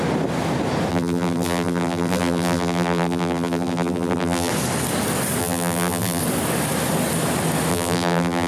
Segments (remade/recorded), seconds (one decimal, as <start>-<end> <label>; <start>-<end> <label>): 0.0-0.9 recorded; 0.9-4.5 remade; 4.5-5.4 recorded; 5.4-6.2 remade; 6.2-7.7 recorded; 7.7-8.5 remade